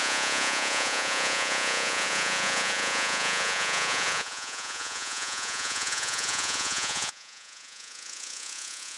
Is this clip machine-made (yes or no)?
yes